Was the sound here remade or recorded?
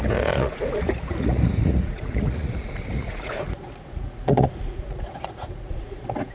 remade